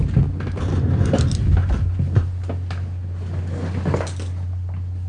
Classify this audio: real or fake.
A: real